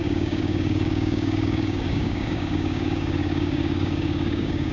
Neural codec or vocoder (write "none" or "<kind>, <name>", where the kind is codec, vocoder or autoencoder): codec, DAC